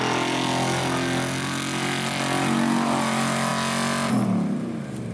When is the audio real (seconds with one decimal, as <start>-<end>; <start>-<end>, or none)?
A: 0.0-5.1